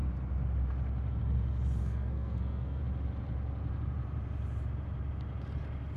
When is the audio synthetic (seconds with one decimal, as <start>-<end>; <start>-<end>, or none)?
1.8-2.8